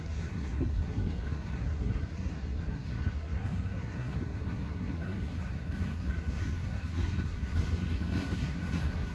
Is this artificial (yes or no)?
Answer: yes